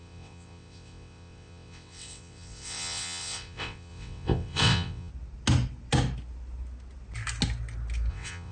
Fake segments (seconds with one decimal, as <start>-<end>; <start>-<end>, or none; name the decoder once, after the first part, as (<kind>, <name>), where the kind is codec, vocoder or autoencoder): 0.0-5.1 (vocoder, WaveNeXt); 8.1-8.5